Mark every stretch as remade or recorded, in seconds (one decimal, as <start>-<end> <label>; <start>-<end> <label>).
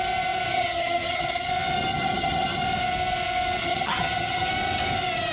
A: 0.0-0.5 recorded; 0.5-1.5 remade; 1.5-1.9 recorded; 1.9-2.6 remade; 2.6-3.6 recorded; 3.6-4.5 remade; 4.5-5.3 recorded